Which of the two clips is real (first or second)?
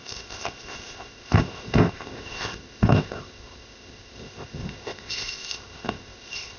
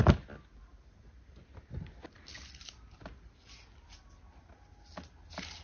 second